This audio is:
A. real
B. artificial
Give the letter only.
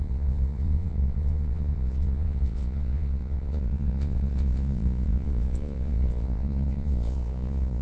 B